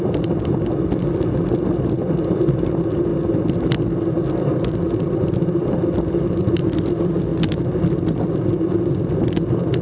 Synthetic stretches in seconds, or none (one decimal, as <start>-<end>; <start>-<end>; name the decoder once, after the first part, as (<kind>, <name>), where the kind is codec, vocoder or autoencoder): none

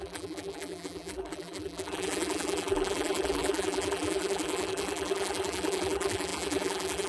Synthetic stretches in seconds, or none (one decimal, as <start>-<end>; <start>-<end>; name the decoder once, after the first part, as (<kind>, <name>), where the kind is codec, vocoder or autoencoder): 0.0-7.1 (vocoder, BigVGAN v2)

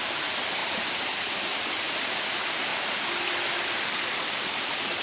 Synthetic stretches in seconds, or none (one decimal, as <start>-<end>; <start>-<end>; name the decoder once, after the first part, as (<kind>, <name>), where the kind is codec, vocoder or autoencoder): 0.0-2.7 (vocoder, BigVGAN v2); 4.1-5.0

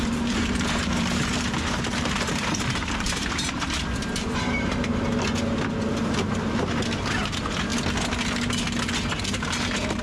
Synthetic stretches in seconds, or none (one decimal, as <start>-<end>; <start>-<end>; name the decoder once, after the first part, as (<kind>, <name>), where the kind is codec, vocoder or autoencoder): 0.0-7.7 (vocoder, BigVGAN v2); 9.2-10.0

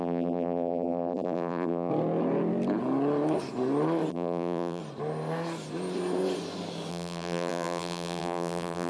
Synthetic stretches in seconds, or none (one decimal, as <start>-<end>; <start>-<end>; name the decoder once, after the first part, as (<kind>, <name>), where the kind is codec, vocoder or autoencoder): 0.0-1.9 (vocoder, BigVGAN v2); 4.1-4.8; 6.9-8.9

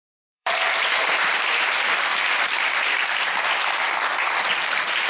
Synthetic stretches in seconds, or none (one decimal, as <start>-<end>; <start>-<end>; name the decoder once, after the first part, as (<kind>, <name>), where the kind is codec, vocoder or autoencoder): 0.0-2.1 (vocoder, BigVGAN v2); 4.5-5.1